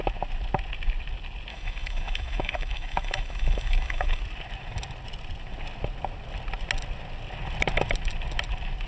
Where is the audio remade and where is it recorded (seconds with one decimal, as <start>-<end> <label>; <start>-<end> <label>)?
0.0-1.5 recorded; 1.5-4.2 remade; 4.2-8.9 recorded